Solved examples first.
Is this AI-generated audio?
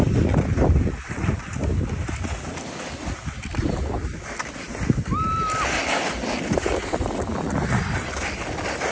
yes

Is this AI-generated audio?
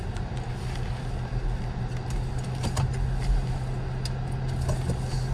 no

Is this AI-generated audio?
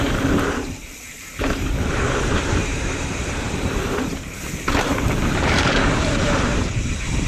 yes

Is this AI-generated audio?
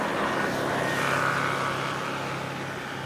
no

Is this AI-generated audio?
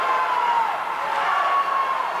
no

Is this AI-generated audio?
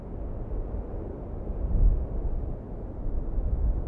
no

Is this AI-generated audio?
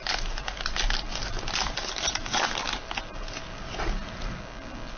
no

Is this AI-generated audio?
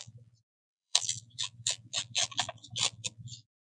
yes